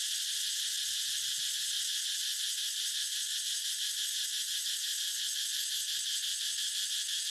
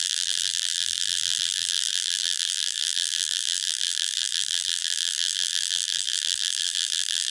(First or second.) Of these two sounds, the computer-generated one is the second